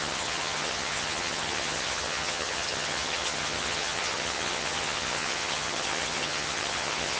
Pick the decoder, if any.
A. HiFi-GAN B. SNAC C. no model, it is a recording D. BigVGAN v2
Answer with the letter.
A